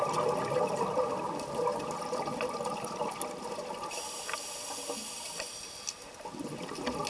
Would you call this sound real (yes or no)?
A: yes